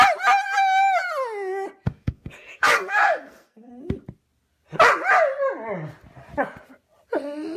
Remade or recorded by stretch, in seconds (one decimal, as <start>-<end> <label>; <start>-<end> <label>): 0.0-1.9 recorded; 1.9-3.7 remade; 3.7-7.6 recorded